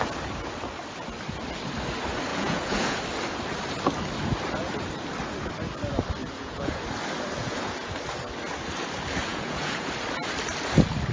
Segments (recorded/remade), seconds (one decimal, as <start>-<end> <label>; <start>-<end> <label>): 0.0-2.3 recorded; 2.3-3.0 remade; 3.0-6.2 recorded; 6.2-6.8 remade; 6.8-7.4 recorded; 7.4-7.9 remade; 7.9-9.3 recorded; 9.3-9.9 remade; 9.9-11.1 recorded